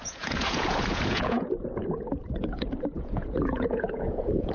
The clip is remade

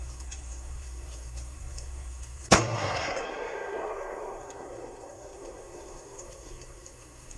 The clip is remade